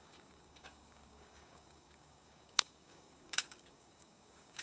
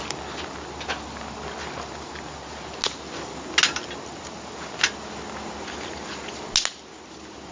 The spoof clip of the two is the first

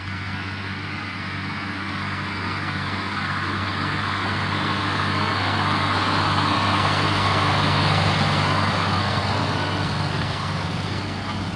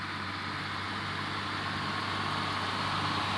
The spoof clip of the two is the first